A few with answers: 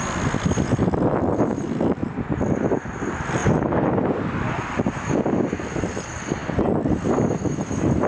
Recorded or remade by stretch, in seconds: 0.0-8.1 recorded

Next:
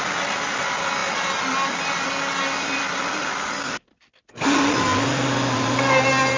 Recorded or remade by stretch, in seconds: 0.0-6.4 recorded

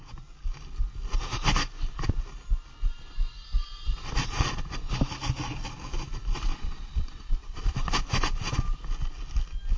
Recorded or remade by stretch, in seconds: 0.0-4.2 recorded; 4.2-4.9 remade; 4.9-6.5 recorded; 6.5-7.9 remade; 7.9-9.8 recorded

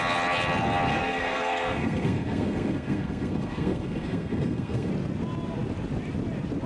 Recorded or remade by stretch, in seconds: 0.0-0.9 recorded; 0.9-4.9 remade; 4.9-6.7 recorded

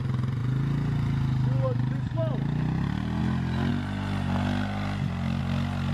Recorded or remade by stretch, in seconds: 0.0-5.9 recorded